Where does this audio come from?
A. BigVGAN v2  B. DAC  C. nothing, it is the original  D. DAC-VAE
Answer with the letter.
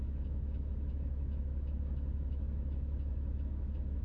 D